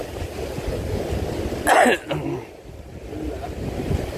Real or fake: real